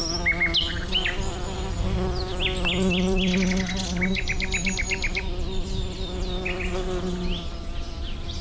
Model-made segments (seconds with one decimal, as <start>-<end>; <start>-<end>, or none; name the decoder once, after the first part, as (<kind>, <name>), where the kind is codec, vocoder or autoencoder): none